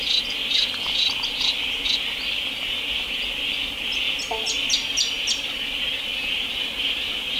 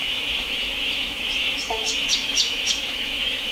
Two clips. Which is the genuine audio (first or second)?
first